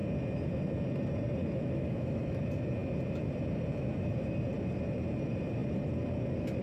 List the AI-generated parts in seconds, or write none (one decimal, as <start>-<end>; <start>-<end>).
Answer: 1.4-2.4